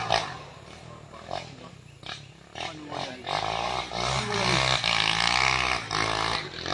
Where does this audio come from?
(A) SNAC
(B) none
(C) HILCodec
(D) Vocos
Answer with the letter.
B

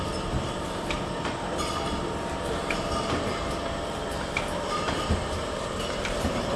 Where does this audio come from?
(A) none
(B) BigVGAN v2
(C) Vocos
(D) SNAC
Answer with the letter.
B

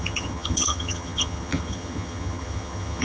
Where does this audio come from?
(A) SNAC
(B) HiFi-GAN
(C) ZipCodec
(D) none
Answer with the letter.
B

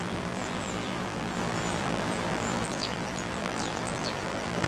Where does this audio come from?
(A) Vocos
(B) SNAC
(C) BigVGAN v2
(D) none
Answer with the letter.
C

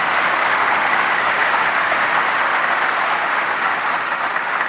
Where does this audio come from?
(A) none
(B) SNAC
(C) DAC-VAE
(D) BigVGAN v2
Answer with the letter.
C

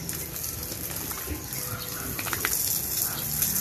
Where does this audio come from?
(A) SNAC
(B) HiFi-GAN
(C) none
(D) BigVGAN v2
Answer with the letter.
C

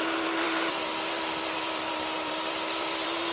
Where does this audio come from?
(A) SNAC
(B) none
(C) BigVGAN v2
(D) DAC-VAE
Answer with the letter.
C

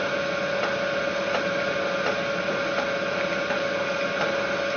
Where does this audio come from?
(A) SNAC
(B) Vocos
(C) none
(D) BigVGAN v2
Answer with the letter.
C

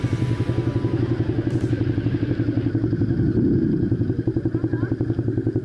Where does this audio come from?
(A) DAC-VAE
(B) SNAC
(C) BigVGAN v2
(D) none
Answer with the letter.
D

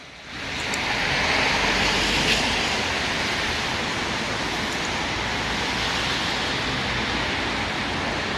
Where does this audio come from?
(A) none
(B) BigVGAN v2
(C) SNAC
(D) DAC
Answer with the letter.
A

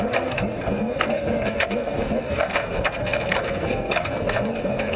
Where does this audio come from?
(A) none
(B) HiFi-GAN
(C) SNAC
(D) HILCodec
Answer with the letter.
C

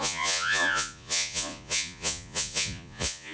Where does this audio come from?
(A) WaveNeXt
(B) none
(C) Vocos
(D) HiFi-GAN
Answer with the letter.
C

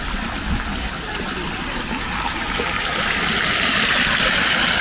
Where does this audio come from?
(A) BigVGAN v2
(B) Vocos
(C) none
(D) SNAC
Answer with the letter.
C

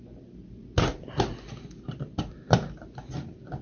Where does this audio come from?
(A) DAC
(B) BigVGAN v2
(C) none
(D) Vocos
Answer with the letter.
C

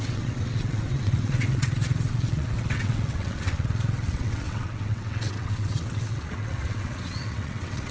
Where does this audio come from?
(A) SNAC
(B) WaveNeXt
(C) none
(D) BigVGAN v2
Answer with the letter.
B